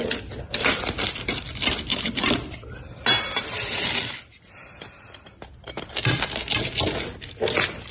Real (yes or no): yes